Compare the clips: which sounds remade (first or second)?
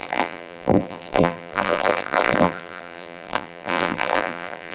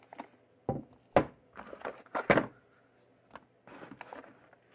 first